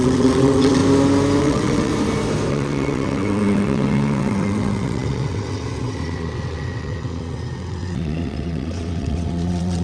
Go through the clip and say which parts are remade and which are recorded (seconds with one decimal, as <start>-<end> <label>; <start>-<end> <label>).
0.0-0.8 remade; 0.8-1.4 recorded; 1.4-1.9 remade; 1.9-2.5 recorded; 2.5-9.8 remade